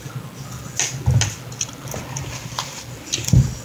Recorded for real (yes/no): yes